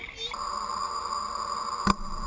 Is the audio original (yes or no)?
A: yes